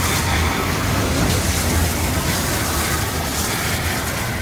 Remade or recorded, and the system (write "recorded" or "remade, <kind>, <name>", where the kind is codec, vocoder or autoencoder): recorded